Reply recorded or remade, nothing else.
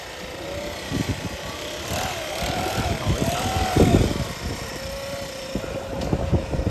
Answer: remade